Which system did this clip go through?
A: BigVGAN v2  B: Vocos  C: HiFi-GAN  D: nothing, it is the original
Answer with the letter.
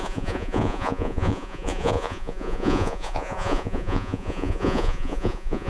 B